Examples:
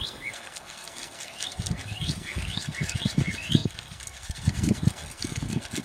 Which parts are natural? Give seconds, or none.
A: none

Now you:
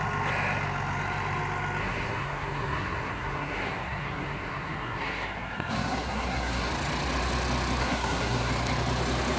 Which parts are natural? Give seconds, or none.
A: 0.0-1.8; 6.7-7.8; 8.5-9.4

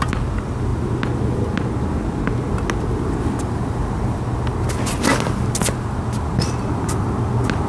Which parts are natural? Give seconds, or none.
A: 0.0-7.7

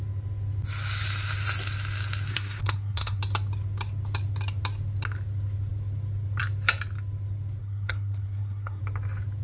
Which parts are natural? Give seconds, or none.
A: 0.0-2.3; 3.2-7.6; 8.8-9.4

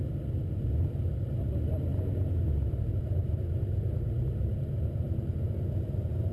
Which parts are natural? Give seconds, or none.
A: 0.0-6.3

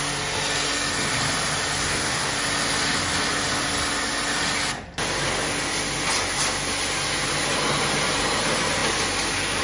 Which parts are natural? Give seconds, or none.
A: 0.0-1.8; 2.3-9.6